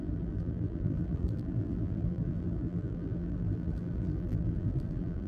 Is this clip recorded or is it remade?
remade